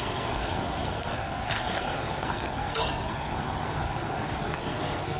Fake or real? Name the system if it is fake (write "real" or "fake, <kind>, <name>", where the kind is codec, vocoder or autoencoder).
fake, codec, SNAC